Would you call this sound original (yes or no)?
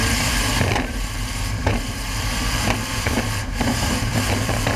no